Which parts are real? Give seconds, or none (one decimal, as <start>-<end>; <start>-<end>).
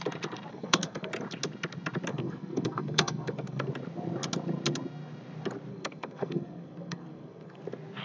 0.0-0.5; 1.1-2.1; 3.7-5.7; 7.6-8.0